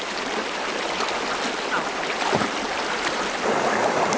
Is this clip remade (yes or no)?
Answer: yes